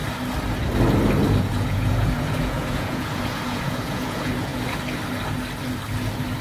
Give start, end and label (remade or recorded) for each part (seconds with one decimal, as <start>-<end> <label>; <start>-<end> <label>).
0.0-1.4 recorded; 1.4-4.5 remade; 4.5-6.4 recorded